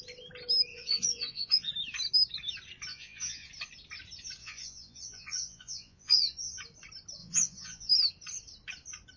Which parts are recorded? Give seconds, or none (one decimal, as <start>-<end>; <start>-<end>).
0.0-0.7; 1.7-2.9; 3.5-4.4; 6.6-7.2; 7.9-9.2